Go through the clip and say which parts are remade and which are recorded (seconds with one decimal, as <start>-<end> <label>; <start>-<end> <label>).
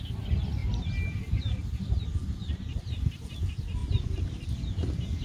0.0-5.2 recorded